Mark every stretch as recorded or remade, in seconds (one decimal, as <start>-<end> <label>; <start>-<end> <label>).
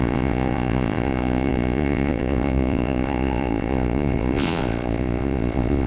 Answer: 0.0-5.9 remade